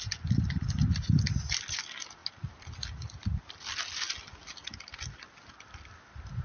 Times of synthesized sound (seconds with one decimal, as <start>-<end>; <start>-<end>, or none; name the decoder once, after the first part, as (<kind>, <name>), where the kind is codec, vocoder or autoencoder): none